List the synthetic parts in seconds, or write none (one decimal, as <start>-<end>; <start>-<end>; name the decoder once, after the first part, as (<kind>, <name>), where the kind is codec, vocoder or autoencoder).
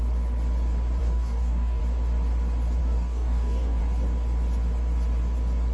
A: 1.0-1.8 (codec, DAC); 2.8-3.8